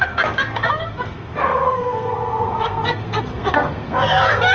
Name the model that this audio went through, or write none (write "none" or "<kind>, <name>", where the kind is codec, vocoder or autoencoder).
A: codec, SNAC